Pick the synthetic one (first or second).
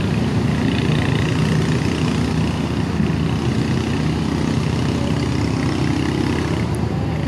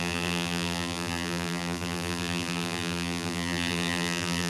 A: second